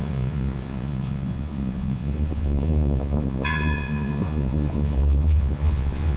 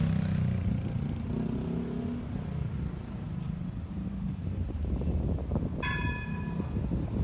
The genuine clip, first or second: second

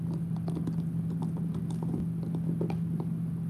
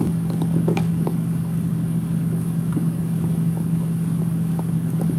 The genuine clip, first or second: first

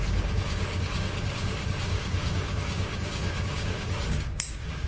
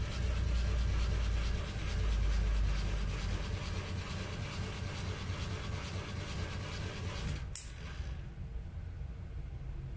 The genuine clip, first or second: second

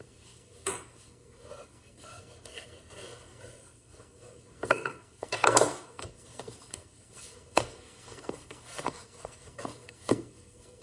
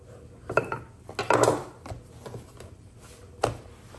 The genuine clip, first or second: second